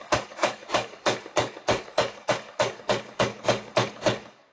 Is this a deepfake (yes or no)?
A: yes